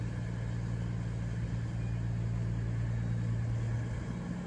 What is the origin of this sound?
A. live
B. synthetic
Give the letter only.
A